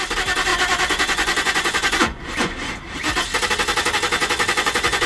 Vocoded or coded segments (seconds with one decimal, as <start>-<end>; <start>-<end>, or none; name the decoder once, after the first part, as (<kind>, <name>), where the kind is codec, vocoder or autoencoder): 0.5-2.8 (vocoder, Vocos); 4.2-5.1